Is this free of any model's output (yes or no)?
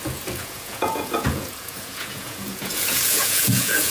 no